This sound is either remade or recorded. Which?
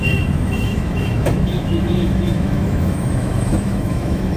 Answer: remade